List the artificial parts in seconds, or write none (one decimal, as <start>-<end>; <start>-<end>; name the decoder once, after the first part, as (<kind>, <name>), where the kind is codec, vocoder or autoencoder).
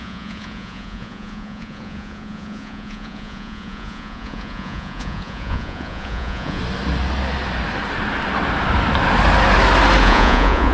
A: 0.0-6.6 (vocoder, Vocos); 10.0-10.7